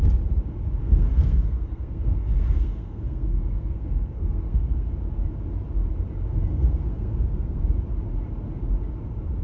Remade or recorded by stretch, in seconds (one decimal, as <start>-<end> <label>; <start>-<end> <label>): 0.0-0.8 recorded; 0.8-4.9 remade; 4.9-6.5 recorded; 6.5-7.6 remade; 7.6-9.4 recorded